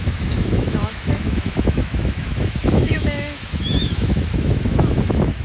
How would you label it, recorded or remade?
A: remade